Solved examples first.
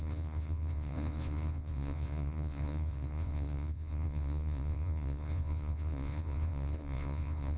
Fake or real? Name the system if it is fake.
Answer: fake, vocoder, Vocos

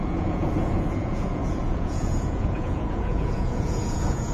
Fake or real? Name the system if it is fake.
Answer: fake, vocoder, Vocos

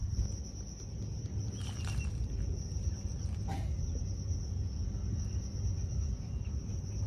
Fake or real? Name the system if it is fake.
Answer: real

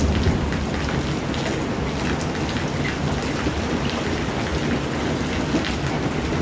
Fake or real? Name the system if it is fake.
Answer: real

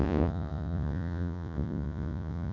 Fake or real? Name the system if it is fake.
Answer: fake, vocoder, Vocos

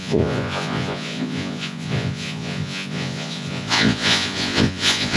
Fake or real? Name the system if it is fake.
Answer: fake, vocoder, Vocos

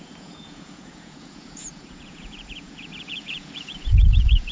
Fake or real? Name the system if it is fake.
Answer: fake, vocoder, Vocos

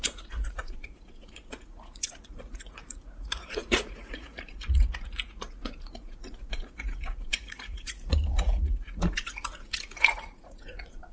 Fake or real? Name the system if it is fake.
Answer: fake, vocoder, Vocos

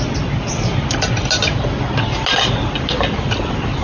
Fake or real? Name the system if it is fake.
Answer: real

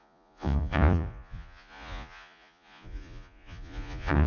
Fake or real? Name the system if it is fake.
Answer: fake, vocoder, Vocos